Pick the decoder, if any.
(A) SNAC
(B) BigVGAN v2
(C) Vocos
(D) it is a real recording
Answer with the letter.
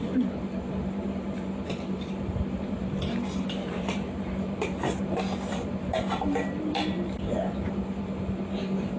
B